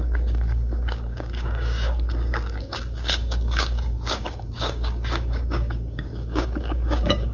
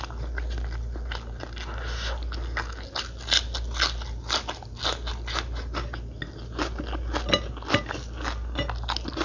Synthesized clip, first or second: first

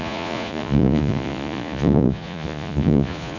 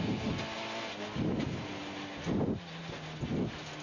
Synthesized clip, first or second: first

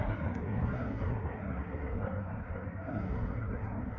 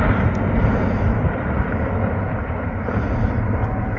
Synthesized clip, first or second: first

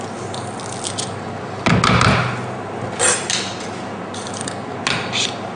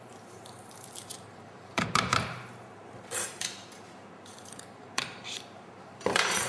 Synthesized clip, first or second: second